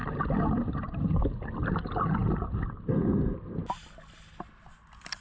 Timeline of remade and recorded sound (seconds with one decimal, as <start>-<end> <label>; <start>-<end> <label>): 0.0-5.2 recorded